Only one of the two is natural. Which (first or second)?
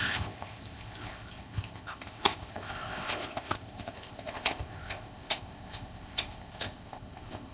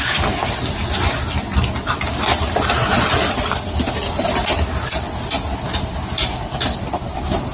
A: second